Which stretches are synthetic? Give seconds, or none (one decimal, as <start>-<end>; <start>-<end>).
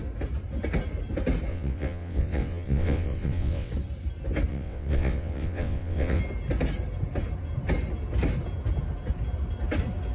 1.5-3.7; 4.5-6.2